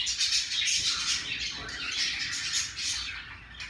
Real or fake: real